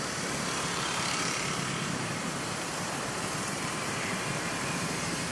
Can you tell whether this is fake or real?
fake